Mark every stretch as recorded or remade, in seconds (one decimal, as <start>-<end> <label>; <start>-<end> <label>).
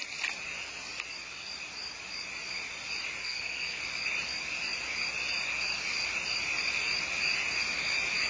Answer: 0.0-3.2 recorded; 3.2-3.8 remade; 3.8-8.3 recorded